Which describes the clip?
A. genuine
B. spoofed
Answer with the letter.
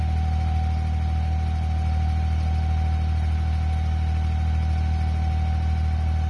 A